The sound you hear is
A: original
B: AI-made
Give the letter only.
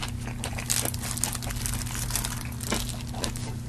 A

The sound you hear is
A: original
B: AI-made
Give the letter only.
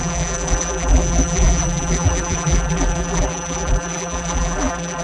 B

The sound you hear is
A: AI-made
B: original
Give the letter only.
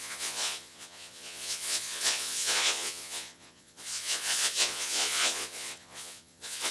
A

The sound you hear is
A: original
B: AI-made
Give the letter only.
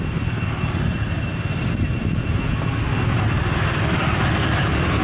A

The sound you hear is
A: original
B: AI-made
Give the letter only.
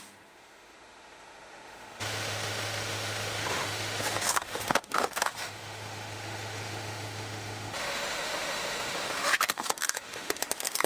B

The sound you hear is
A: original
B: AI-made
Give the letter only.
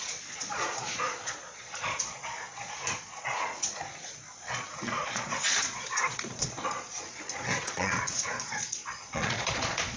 B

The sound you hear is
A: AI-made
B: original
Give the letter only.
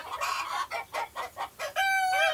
B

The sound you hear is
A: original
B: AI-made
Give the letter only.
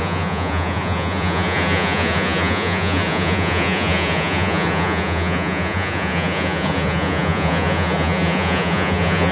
B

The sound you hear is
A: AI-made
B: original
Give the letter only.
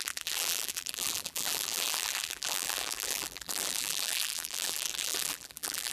A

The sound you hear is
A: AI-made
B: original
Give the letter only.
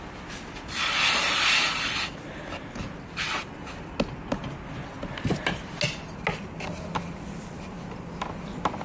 B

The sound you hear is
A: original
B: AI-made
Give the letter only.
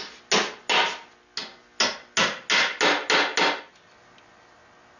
A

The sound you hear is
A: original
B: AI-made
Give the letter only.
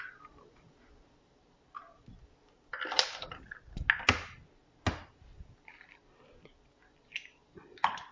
A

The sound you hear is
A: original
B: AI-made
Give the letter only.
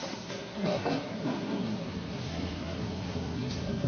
B